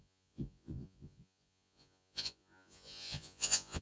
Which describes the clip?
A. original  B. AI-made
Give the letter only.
B